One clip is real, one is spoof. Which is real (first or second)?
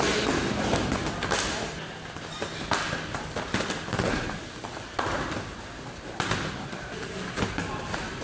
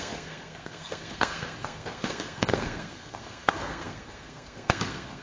first